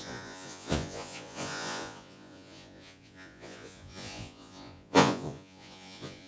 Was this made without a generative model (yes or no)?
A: no